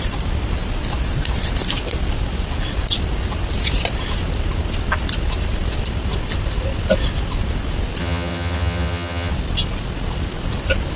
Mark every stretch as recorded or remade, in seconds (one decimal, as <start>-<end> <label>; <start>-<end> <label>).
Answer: 0.0-8.0 recorded; 8.0-9.3 remade; 9.3-11.0 recorded